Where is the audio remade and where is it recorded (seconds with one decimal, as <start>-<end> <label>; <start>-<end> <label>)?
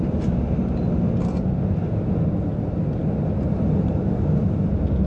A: 0.0-5.1 recorded